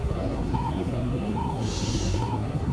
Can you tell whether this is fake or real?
fake